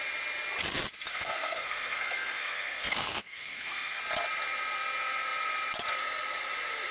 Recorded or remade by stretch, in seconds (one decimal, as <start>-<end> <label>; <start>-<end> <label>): 0.0-1.1 recorded; 1.1-4.0 remade; 4.0-6.9 recorded